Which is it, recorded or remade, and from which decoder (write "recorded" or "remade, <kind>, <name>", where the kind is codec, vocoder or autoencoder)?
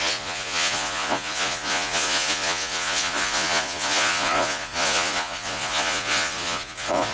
remade, vocoder, Vocos